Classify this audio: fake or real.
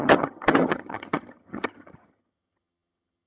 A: fake